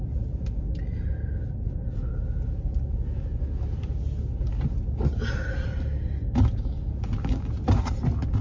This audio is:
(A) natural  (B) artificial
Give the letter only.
A